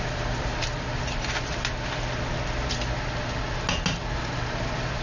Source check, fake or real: real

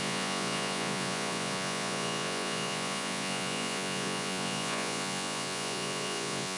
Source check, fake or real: fake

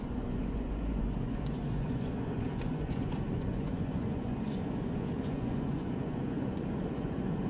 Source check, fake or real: fake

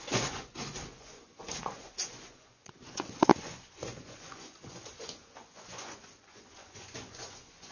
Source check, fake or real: fake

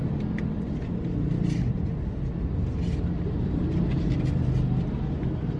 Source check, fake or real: real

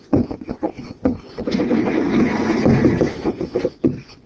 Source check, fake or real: fake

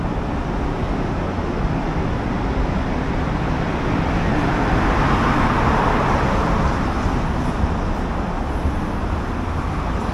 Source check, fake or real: real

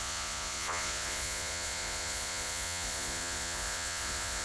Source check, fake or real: fake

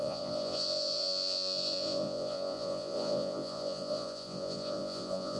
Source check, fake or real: fake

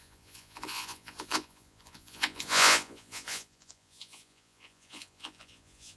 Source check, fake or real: fake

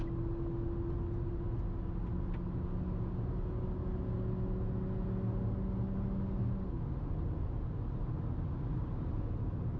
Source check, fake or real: real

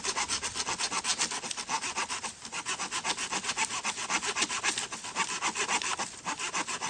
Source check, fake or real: real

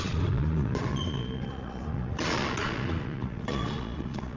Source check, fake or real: fake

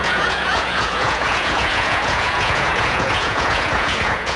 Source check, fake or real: fake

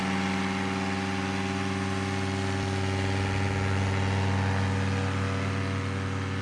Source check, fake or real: real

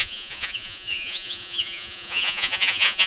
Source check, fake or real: fake